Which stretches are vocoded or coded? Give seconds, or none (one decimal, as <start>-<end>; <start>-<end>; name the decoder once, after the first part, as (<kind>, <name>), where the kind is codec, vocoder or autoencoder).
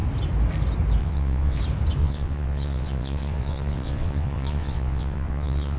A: 1.0-1.6 (vocoder, WaveNeXt); 2.0-5.8